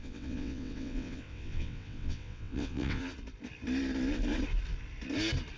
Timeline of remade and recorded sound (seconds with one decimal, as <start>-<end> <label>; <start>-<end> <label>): 0.0-3.0 remade; 3.0-5.6 recorded